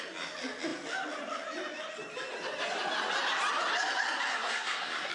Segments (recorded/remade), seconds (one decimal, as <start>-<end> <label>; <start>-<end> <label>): 0.0-4.3 recorded; 4.3-5.1 remade